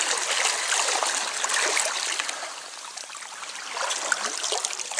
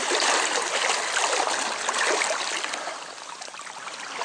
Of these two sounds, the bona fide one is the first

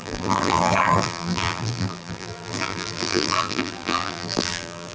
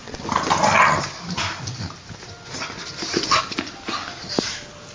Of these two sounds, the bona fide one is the second